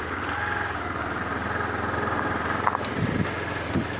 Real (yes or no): yes